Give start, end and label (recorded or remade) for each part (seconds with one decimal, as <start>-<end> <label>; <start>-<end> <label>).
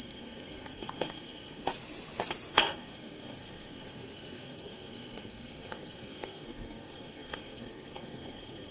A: 0.0-1.7 remade; 1.7-2.5 recorded; 2.5-8.7 remade